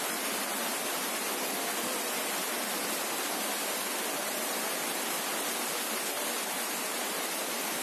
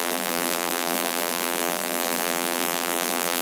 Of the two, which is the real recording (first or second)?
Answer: first